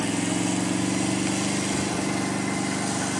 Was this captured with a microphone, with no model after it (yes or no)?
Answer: yes